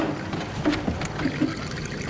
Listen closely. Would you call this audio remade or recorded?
recorded